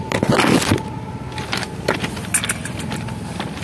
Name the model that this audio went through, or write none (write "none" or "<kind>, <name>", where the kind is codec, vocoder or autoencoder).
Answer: none